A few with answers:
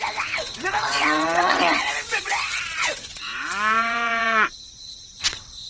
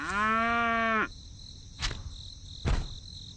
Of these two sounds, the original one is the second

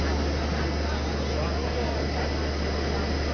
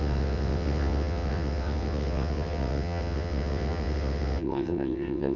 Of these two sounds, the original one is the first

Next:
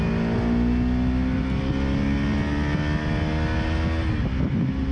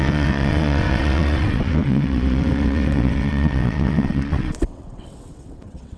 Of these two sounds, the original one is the first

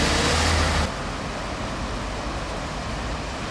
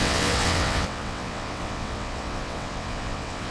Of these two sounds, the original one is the first